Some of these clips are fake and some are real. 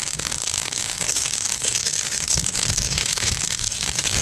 fake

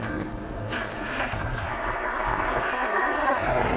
fake